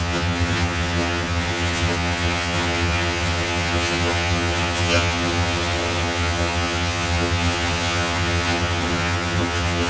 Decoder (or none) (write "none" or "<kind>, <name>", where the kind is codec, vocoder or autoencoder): vocoder, HiFi-GAN